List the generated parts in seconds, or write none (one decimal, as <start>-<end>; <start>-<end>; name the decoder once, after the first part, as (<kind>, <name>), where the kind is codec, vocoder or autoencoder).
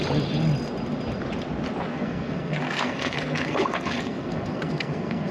1.9-5.3 (codec, SNAC)